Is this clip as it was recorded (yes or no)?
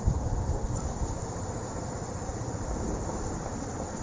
yes